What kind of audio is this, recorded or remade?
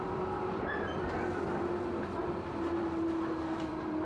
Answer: remade